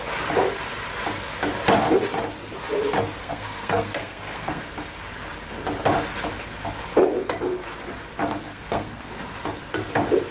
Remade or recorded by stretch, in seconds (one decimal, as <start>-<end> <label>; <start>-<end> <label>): 0.0-3.2 recorded; 3.2-4.6 remade; 4.6-8.2 recorded; 8.2-9.1 remade; 9.1-10.3 recorded